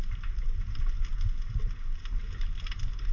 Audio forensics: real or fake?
real